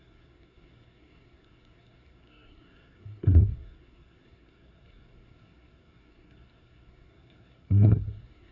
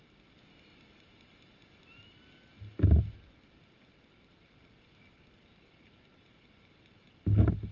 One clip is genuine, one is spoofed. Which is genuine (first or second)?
second